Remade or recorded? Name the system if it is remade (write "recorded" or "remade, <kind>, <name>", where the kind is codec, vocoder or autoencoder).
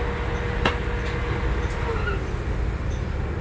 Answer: recorded